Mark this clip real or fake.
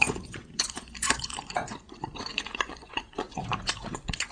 fake